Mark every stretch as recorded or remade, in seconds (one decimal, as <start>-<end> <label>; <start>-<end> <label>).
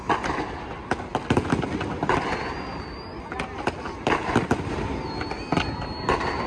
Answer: 0.0-6.5 recorded